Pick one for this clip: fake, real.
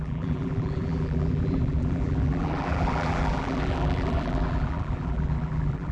fake